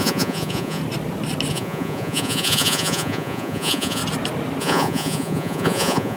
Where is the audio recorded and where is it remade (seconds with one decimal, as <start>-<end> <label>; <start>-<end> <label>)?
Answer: 0.0-0.8 remade; 0.8-1.5 recorded; 1.5-4.0 remade; 4.0-4.6 recorded; 4.6-6.2 remade